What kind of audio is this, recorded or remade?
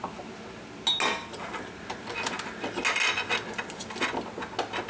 recorded